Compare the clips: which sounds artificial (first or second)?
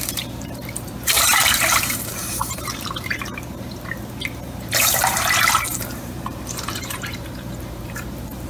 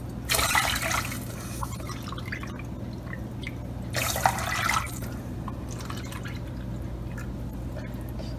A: first